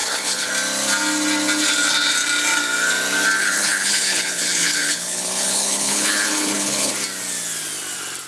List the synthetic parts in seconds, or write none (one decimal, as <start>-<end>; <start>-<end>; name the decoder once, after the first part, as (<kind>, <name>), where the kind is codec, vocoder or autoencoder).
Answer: 0.0-0.5 (codec, HILCodec); 3.4-6.9